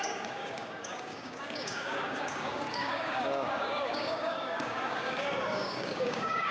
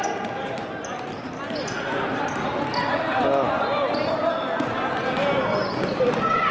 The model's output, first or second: first